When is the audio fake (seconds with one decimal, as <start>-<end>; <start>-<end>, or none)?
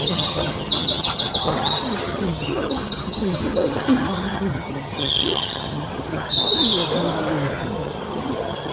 0.0-6.4; 7.5-8.7